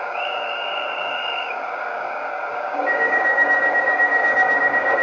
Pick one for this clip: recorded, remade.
remade